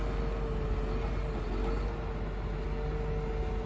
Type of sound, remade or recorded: recorded